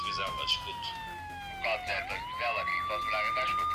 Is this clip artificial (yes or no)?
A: no